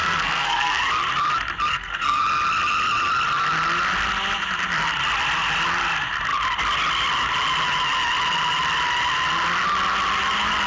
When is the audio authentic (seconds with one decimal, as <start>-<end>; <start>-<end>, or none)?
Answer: 0.8-1.7; 2.2-10.7